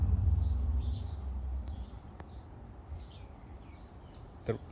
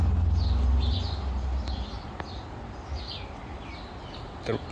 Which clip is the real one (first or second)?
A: second